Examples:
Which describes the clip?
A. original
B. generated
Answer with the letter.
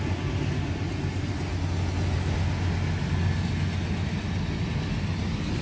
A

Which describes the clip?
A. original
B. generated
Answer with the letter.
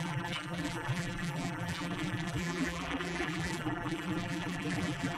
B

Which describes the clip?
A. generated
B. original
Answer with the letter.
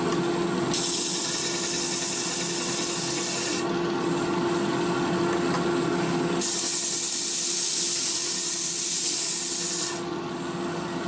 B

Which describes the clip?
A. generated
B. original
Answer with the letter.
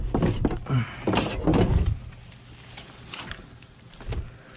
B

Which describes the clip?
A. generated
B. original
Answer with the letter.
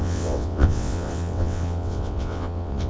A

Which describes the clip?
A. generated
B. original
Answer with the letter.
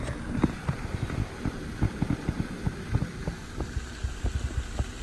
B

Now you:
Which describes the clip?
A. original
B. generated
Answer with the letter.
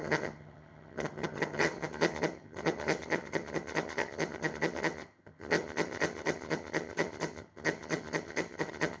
B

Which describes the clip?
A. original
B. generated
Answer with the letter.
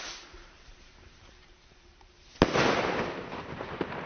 A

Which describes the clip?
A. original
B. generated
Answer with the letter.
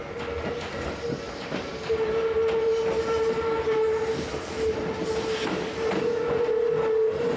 A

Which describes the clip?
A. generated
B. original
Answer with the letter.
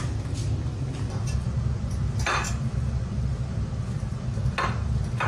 B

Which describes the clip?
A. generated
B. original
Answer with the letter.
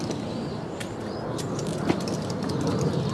B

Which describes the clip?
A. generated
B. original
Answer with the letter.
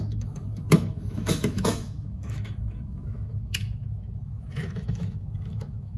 A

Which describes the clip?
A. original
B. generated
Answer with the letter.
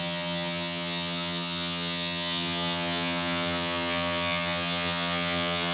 B